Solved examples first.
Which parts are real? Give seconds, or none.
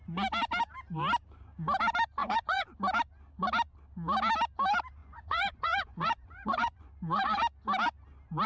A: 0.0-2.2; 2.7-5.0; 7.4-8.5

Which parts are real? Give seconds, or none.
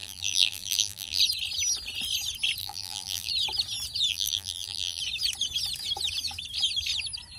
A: 1.2-2.6; 3.3-4.1; 5.0-7.4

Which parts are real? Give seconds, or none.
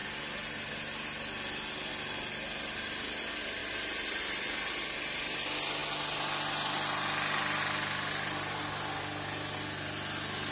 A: 0.0-3.6; 4.2-10.5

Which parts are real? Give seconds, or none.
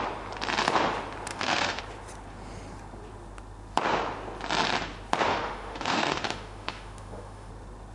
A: 0.0-1.3; 1.8-5.3; 7.5-7.9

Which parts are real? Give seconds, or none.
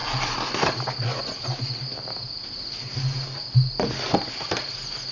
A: 0.0-5.1